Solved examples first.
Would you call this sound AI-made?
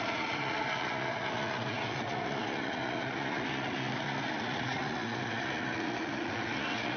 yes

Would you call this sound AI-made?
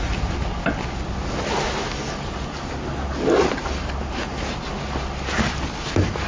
no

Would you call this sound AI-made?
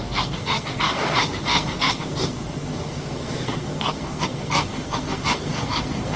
yes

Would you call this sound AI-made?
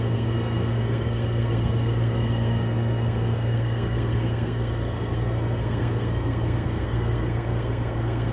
yes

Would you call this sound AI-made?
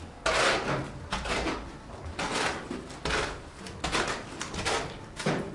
no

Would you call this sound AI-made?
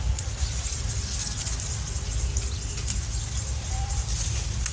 no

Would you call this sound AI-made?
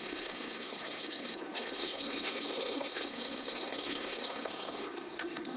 yes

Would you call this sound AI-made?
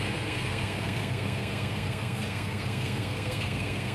yes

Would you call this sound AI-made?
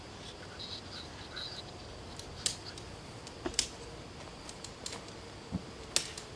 no